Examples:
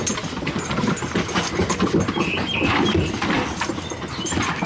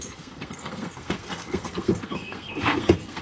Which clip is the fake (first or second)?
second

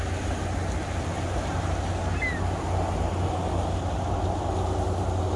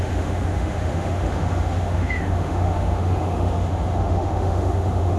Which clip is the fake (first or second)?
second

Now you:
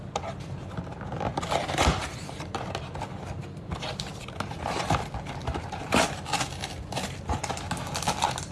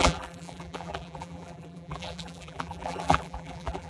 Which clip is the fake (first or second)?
second